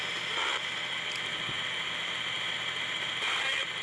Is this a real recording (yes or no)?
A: yes